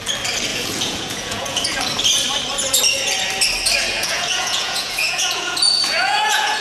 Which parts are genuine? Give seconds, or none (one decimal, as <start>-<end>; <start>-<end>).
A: 0.0-0.5; 1.8-3.9